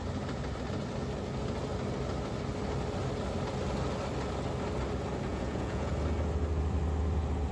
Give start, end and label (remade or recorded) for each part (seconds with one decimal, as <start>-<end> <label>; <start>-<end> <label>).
0.0-5.3 recorded; 5.3-5.9 remade; 5.9-7.5 recorded